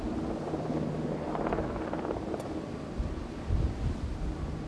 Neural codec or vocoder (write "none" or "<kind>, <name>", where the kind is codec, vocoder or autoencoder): none